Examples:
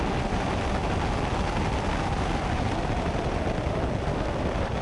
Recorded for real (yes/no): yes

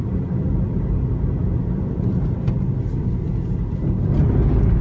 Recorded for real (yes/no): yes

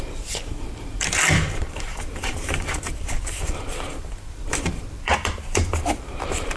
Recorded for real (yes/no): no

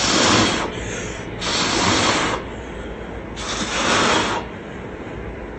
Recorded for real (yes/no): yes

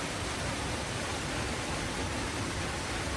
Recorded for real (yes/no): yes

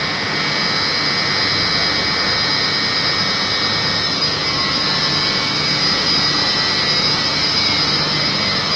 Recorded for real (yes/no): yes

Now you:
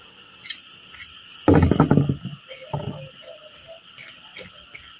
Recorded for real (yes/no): yes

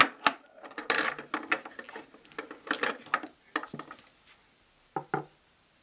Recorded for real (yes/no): yes